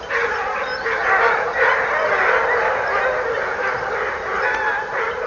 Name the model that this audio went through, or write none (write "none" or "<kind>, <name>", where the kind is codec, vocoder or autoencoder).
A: none